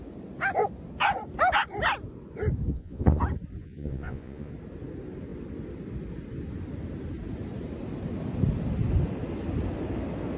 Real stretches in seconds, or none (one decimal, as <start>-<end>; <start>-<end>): 0.0-2.7; 3.2-3.6; 4.5-10.4

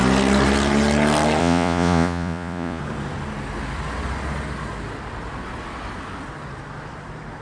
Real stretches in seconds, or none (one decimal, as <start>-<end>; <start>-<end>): 0.0-1.4; 2.8-7.4